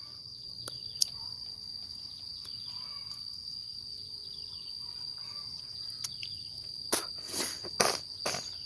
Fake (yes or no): yes